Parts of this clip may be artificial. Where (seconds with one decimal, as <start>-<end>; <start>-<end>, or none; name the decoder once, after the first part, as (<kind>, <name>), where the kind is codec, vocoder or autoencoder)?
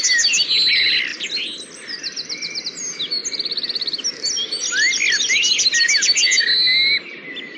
none